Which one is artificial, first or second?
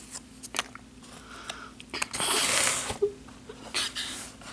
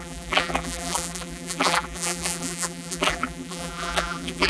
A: second